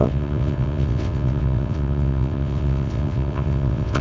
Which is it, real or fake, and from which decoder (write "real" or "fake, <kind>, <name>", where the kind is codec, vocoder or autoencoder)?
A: fake, vocoder, WaveNeXt